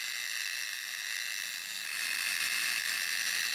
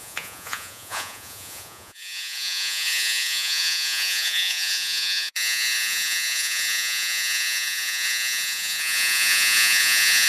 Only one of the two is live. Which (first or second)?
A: first